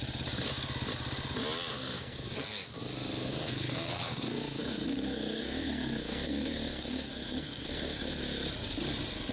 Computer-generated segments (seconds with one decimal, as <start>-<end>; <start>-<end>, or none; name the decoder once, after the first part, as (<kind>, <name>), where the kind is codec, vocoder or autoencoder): 1.7-2.7 (codec, SNAC); 3.2-8.2